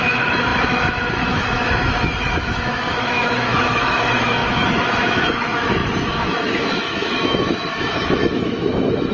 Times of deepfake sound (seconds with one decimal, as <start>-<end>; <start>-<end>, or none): 0.0-9.1